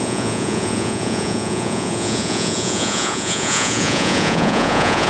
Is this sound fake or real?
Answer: fake